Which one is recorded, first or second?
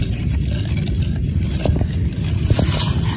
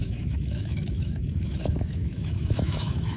first